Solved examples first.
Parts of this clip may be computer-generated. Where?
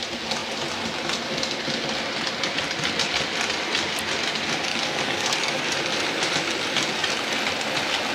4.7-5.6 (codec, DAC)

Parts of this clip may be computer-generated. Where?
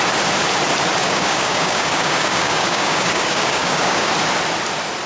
1.0-4.1 (codec, DAC)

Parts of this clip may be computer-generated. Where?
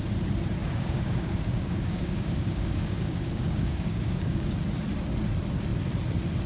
0.6-4.5 (codec, DAC)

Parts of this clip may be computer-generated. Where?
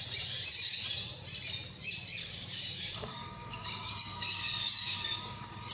2.2-5.7 (codec, DAC)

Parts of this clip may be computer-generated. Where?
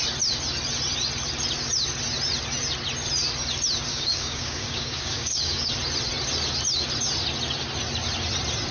3.9-5.7 (codec, DAC)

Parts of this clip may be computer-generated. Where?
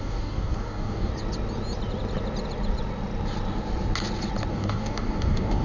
0.0-1.1 (codec, DAC); 4.5-5.6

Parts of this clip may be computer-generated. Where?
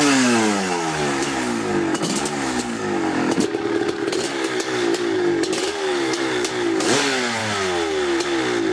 0.0-7.4 (codec, DAC)